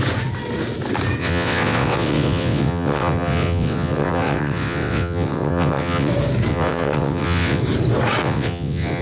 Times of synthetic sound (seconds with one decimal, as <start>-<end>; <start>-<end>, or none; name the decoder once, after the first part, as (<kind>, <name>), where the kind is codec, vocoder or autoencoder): 1.2-6.1 (vocoder, WaveNeXt); 6.5-7.6; 8.2-9.0